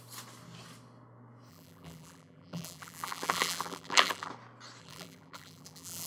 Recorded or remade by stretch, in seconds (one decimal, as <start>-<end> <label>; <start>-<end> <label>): 0.0-1.5 recorded; 1.5-4.3 remade; 4.3-4.8 recorded; 4.8-6.1 remade